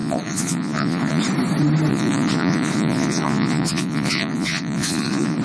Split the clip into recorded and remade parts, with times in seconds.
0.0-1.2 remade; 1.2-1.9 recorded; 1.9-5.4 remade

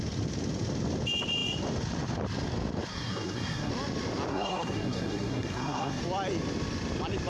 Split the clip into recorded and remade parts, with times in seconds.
0.0-2.9 recorded; 2.9-3.7 remade; 3.7-4.3 recorded; 4.3-6.0 remade; 6.0-7.3 recorded

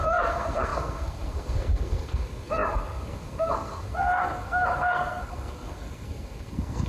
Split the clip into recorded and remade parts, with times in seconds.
0.0-6.9 remade

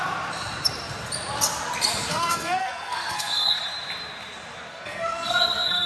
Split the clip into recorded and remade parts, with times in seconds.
0.0-2.1 recorded; 2.1-3.6 remade; 3.6-4.7 recorded; 4.7-5.9 remade